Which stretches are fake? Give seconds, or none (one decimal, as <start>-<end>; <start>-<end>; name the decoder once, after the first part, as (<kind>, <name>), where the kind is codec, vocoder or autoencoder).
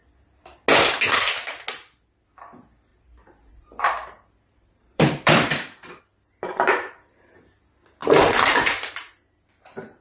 2.9-6.0 (vocoder, BigVGAN v2); 6.5-7.3; 8.0-8.9